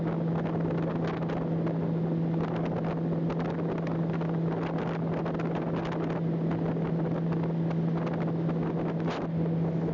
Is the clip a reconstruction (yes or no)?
no